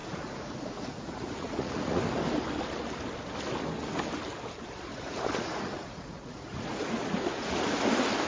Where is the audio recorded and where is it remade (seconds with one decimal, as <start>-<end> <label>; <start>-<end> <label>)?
0.0-2.0 remade; 2.0-4.9 recorded; 4.9-7.8 remade; 7.8-8.3 recorded